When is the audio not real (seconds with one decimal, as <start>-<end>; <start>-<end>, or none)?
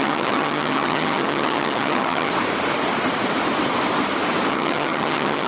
0.0-2.3; 4.5-5.5